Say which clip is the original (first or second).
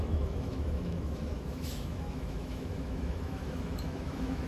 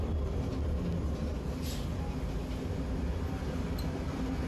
second